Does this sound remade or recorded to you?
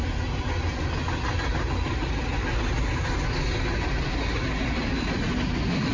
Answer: recorded